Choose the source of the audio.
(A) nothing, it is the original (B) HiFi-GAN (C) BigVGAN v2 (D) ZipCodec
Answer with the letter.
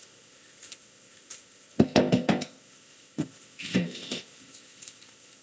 D